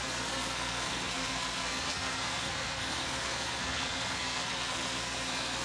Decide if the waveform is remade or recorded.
remade